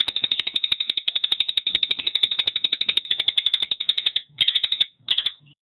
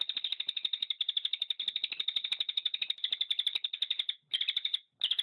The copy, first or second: first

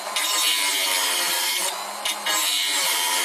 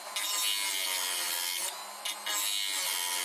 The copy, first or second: first